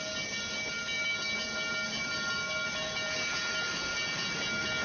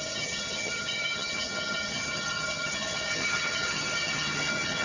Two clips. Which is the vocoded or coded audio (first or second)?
second